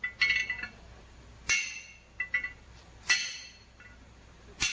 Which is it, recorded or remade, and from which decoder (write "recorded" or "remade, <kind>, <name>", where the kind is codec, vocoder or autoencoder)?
recorded